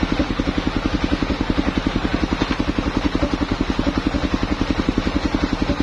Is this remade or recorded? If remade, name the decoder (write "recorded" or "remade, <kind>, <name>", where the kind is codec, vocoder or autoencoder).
recorded